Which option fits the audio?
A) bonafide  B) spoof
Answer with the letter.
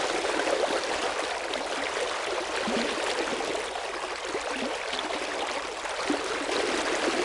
A